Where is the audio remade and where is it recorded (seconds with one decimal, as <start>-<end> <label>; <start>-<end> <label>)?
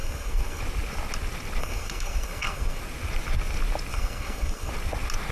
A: 0.0-0.6 remade; 0.6-1.6 recorded; 1.6-2.8 remade; 2.8-3.9 recorded; 3.9-4.7 remade; 4.7-5.3 recorded